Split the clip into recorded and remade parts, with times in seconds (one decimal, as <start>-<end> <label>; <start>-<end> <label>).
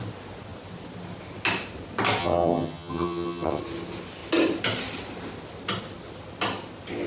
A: 0.0-2.2 recorded; 2.2-3.6 remade; 3.6-7.1 recorded